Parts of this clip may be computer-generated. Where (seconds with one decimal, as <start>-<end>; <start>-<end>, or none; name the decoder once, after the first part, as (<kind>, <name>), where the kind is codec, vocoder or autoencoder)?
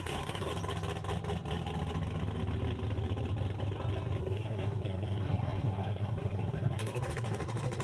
0.0-0.5 (codec, SNAC); 4.2-7.8